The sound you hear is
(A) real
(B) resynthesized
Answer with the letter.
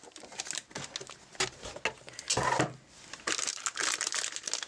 A